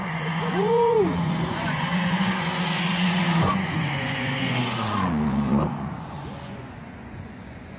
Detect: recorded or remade remade